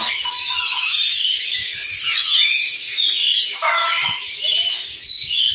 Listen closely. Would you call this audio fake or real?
fake